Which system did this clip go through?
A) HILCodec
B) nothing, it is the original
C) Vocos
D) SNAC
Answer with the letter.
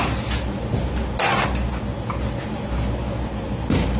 B